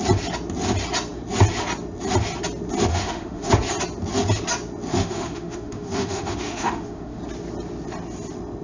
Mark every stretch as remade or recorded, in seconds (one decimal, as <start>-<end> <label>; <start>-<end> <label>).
0.0-2.9 recorded; 2.9-3.5 remade; 3.5-4.9 recorded; 4.9-7.2 remade; 7.2-8.6 recorded